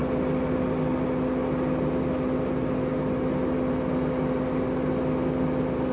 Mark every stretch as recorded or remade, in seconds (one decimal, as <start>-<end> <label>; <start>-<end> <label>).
0.0-5.9 recorded